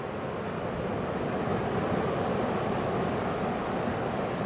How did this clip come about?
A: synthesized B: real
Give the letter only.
B